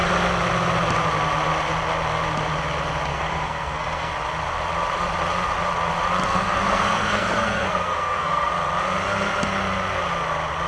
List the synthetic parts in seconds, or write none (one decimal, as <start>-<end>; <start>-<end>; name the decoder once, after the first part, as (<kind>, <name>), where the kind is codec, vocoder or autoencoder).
3.1-4.1 (codec, SNAC); 6.2-8.5